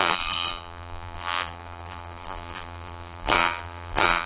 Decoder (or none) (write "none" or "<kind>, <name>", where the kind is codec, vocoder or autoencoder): vocoder, BigVGAN v2